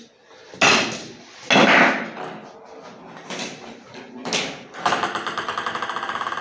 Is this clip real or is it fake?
real